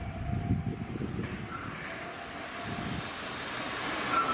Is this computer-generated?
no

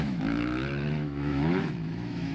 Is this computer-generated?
yes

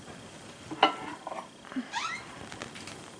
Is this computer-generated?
no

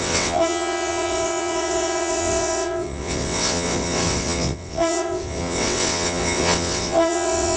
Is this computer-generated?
yes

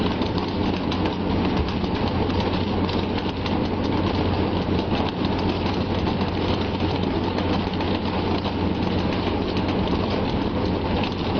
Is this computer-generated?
no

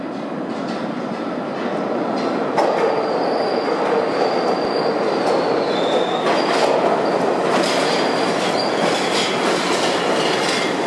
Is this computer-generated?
no